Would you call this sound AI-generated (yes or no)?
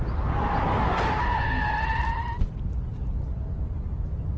no